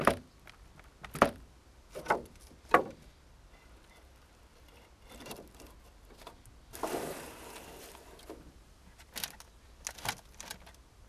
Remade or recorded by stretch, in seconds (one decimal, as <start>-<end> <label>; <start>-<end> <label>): 0.0-11.1 recorded